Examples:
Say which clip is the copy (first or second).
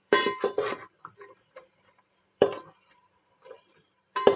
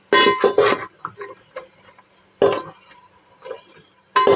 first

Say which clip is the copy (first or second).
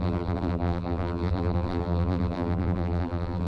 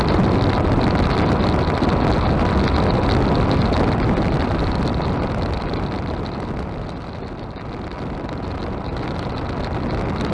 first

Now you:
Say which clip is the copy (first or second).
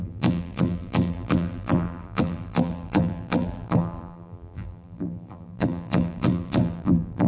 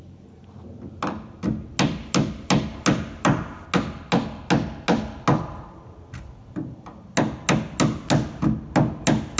first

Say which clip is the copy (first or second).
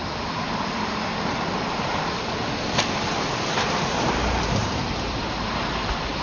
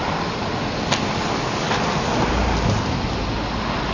first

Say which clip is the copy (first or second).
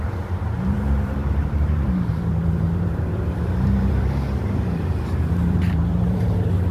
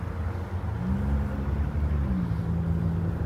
first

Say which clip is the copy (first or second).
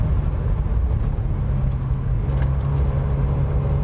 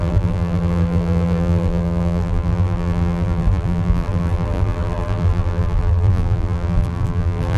second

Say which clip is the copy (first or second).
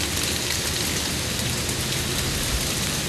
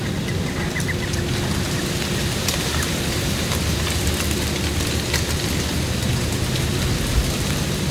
second